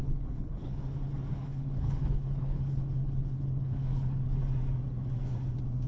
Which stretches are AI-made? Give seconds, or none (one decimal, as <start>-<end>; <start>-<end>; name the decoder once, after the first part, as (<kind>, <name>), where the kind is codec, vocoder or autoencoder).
0.0-0.8 (codec, HILCodec); 1.3-4.4